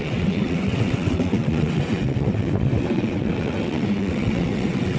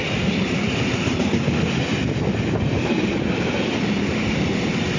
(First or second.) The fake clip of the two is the first